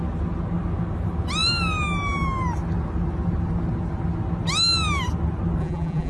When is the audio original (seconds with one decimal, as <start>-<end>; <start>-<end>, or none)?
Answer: 0.0-5.6